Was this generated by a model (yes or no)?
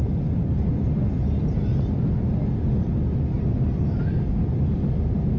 no